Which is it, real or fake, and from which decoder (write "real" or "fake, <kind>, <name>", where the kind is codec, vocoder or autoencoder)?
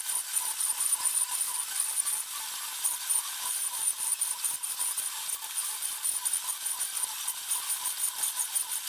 real